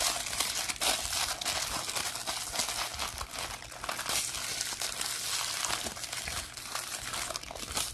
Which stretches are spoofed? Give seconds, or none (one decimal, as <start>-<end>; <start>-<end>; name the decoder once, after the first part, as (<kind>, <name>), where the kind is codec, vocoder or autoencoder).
none